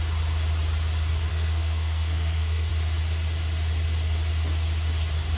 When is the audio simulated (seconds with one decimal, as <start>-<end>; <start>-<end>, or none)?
1.3-2.7